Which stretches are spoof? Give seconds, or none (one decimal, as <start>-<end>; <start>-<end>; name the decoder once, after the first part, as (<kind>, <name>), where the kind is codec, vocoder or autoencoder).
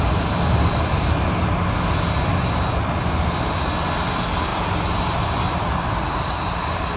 none